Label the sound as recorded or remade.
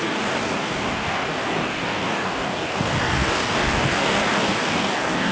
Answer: remade